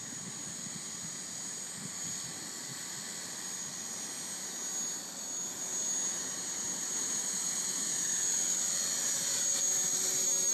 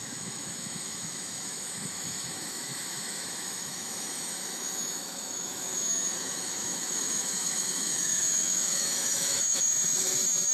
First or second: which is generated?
second